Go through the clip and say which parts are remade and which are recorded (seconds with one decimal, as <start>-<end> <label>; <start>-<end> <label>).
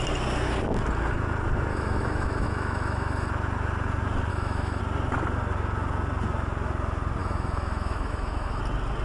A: 0.0-1.7 recorded; 1.7-3.3 remade; 3.3-4.3 recorded; 4.3-4.8 remade; 4.8-7.2 recorded; 7.2-8.6 remade; 8.6-9.0 recorded